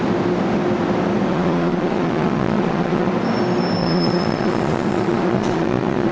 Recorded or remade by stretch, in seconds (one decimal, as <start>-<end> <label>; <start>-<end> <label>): 0.0-1.3 recorded; 1.3-3.1 remade; 3.1-3.8 recorded; 3.8-6.1 remade